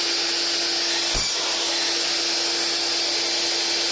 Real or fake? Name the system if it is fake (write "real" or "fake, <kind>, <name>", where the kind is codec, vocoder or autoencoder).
real